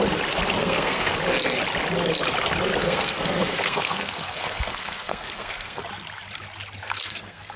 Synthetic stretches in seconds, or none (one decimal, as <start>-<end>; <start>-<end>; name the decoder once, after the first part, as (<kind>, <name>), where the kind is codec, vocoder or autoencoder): 0.6-1.1 (codec, SNAC); 2.8-5.8; 6.8-7.6